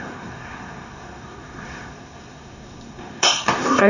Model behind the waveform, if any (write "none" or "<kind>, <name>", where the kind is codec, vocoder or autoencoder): codec, SNAC